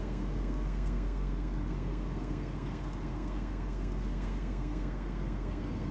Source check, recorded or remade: remade